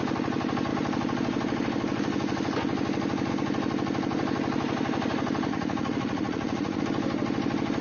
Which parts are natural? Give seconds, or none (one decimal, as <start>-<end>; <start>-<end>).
0.0-5.5; 6.8-7.8